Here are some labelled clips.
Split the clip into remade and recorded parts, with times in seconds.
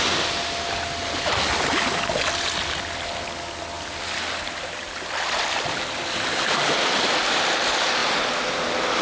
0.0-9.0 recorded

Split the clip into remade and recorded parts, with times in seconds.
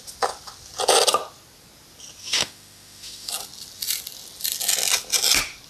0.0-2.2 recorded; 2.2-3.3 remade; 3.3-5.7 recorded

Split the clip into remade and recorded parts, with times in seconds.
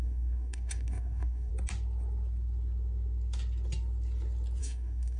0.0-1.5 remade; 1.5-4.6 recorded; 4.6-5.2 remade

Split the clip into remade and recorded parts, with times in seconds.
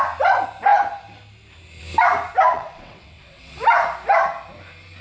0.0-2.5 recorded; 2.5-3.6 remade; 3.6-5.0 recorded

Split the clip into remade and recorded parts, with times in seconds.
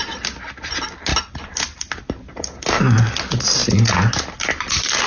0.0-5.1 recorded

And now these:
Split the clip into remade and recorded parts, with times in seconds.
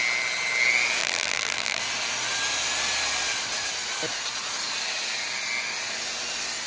0.0-1.0 recorded; 1.0-1.8 remade; 1.8-6.7 recorded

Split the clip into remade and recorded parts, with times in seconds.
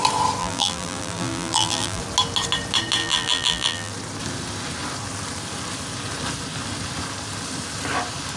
0.0-0.4 recorded; 0.4-2.0 remade; 2.0-3.0 recorded; 3.0-3.9 remade; 3.9-8.4 recorded